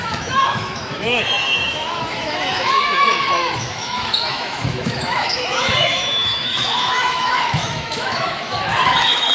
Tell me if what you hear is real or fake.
fake